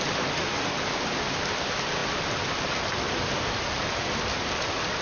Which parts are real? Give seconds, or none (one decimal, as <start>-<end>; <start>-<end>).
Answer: 0.0-5.0